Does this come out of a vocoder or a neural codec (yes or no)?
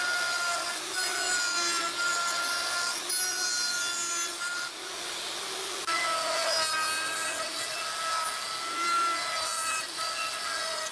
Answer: no